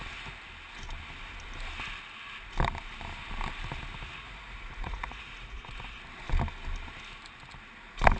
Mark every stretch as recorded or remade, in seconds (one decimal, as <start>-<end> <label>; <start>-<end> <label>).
0.0-4.2 recorded; 4.2-6.0 remade; 6.0-8.2 recorded